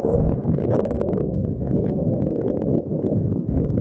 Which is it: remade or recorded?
remade